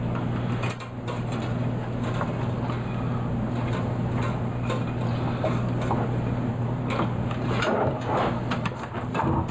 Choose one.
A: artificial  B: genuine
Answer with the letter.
B